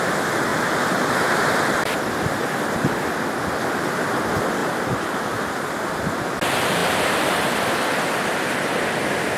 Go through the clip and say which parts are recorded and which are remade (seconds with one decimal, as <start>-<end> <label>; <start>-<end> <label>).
0.0-0.5 recorded; 0.5-1.6 remade; 1.6-4.6 recorded; 4.6-5.5 remade; 5.5-6.8 recorded; 6.8-7.3 remade; 7.3-9.4 recorded